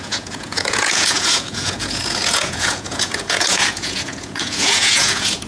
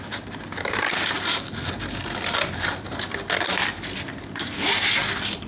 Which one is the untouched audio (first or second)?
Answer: second